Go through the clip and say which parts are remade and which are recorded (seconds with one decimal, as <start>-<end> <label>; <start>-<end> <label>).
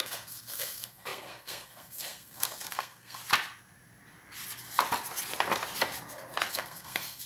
0.0-3.2 remade; 3.2-6.5 recorded; 6.5-7.3 remade